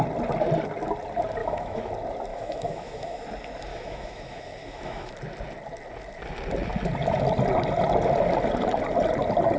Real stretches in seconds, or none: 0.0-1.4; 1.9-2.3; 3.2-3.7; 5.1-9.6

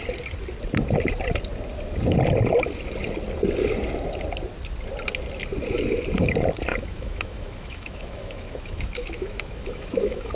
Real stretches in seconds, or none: 0.0-6.7

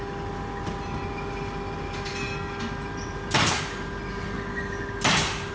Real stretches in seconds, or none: 0.0-5.5

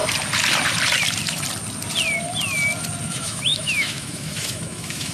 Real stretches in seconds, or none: 0.0-3.1

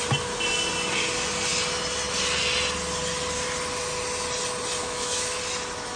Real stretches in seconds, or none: 0.0-4.8; 5.4-6.0

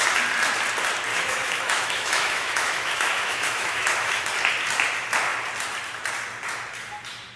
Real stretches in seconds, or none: 0.0-1.1; 4.2-7.4

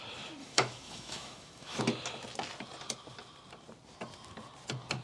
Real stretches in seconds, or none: 0.0-0.4; 1.8-5.0